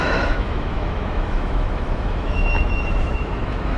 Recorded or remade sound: remade